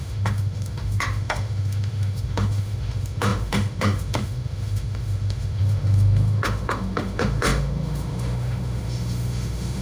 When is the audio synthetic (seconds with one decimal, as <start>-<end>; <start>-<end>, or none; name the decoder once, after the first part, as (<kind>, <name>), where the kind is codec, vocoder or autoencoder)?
0.0-9.8 (autoencoder, DAC-VAE)